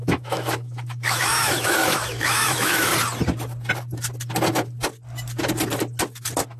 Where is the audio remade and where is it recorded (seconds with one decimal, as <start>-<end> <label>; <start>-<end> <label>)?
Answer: 0.0-2.9 remade; 2.9-6.6 recorded